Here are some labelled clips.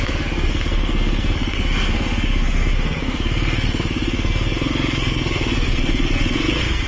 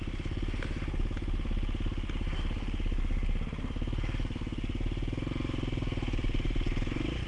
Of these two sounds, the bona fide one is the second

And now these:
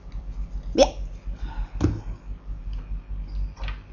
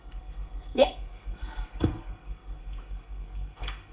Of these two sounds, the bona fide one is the first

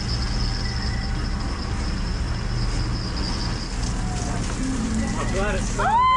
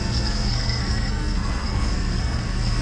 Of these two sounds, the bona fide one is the first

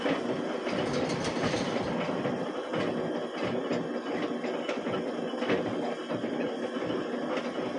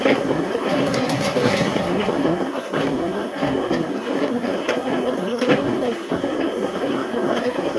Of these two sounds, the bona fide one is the first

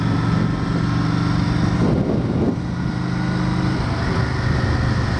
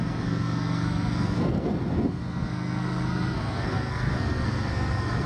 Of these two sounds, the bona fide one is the first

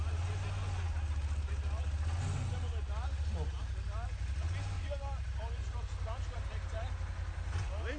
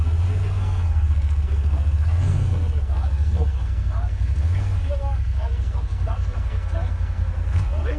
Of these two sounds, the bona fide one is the first